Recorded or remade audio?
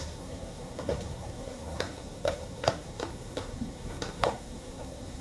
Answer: remade